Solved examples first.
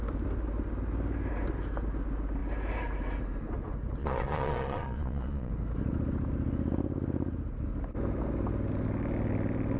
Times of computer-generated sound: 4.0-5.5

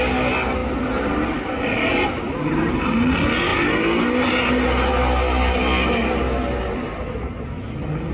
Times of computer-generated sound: none

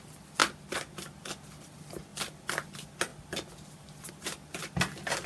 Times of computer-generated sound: none

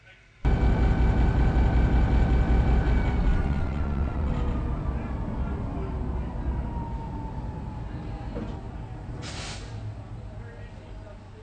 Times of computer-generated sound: 3.3-4.3

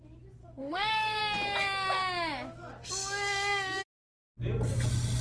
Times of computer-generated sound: 0.4-1.2

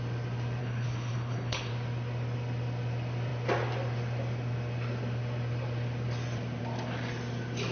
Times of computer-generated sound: 0.6-1.7

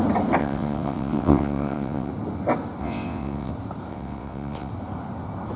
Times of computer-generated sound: 0.4-2.1; 2.8-3.5; 3.9-4.7